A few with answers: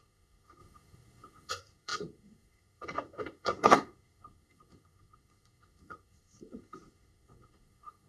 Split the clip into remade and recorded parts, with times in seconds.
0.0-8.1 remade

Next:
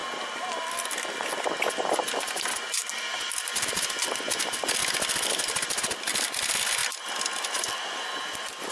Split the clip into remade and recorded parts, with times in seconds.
0.0-8.7 recorded